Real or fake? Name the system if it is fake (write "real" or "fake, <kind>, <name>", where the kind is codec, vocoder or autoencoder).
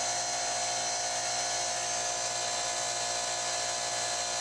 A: real